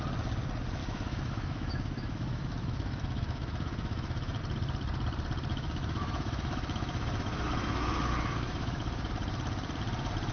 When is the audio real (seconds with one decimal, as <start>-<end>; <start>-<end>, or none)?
0.0-0.8; 4.4-5.5; 9.1-10.3